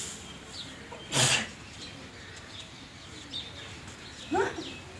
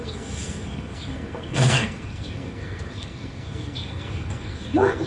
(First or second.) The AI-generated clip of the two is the second